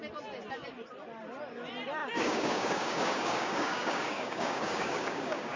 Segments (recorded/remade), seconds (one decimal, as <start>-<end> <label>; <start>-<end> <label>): 0.0-2.0 recorded; 2.0-5.6 remade